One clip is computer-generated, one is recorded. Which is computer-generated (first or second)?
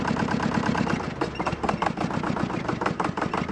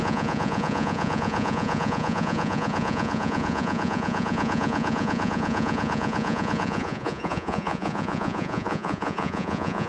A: second